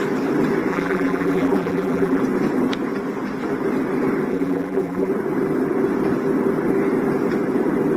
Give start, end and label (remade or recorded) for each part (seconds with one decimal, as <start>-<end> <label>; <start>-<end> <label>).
0.0-0.7 recorded; 0.7-2.2 remade; 2.2-4.3 recorded; 4.3-5.1 remade; 5.1-8.0 recorded